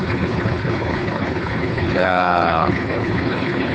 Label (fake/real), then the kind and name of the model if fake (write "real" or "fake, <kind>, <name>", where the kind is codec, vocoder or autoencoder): fake, codec, HILCodec